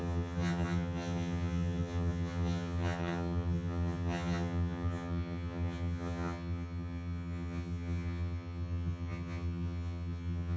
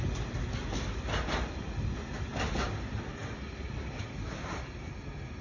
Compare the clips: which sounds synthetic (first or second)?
first